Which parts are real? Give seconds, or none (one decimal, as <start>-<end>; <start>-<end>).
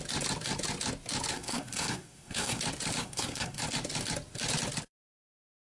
0.0-1.3; 2.6-3.0; 3.6-5.7